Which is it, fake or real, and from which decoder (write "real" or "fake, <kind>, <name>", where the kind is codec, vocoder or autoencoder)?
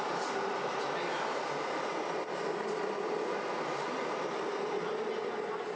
real